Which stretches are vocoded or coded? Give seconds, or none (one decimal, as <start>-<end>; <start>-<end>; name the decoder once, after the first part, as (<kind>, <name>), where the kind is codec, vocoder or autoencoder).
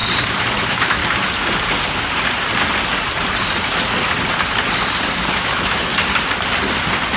0.5-1.0 (autoencoder, DAC-VAE); 5.3-5.9